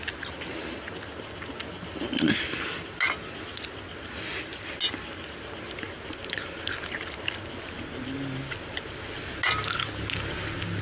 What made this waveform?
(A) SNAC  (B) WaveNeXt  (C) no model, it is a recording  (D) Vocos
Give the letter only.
C